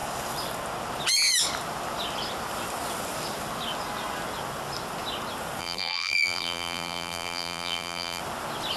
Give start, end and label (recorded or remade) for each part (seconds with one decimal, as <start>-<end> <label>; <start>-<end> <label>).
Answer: 0.0-5.6 recorded; 5.6-8.2 remade; 8.2-8.8 recorded